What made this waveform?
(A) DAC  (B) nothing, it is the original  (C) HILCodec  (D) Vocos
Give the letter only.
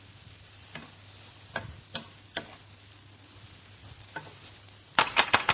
B